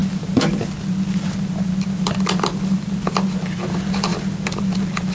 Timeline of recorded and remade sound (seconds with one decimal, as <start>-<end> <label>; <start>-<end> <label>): 0.0-5.1 recorded